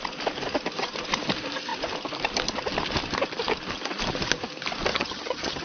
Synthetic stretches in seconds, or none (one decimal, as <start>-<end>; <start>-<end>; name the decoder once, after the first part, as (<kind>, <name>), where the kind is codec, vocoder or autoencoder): 4.9-5.6 (vocoder, HiFi-GAN)